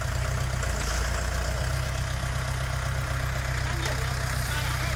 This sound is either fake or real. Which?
real